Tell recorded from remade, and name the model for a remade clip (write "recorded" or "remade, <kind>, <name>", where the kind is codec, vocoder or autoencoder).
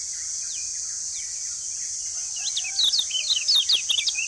recorded